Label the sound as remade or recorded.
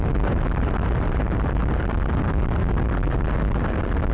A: remade